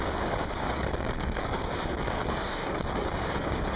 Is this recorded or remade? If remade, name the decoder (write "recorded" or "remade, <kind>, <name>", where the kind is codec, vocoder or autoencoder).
remade, codec, DAC